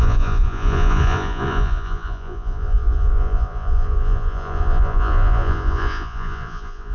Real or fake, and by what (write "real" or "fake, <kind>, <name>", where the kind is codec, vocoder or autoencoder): fake, vocoder, Vocos